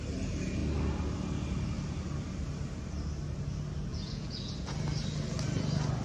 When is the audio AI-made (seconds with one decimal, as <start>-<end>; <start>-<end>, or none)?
3.9-4.5